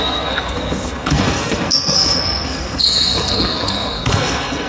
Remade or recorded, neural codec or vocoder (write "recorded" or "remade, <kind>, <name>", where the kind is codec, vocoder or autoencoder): remade, codec, SNAC